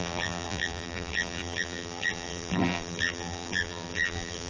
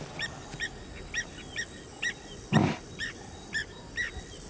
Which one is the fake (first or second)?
first